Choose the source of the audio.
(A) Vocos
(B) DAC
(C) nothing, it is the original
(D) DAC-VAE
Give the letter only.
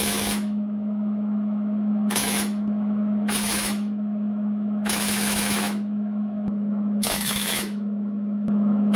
D